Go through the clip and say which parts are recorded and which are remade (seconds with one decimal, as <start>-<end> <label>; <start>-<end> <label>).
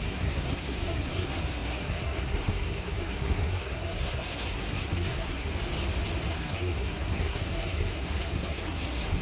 0.0-5.5 remade; 5.5-6.3 recorded; 6.3-9.2 remade